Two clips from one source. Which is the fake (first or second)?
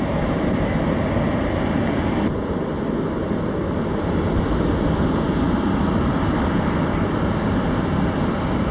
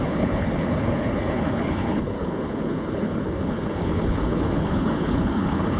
second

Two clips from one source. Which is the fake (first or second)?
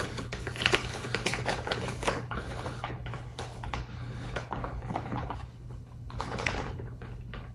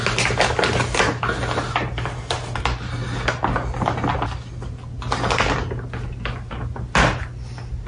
first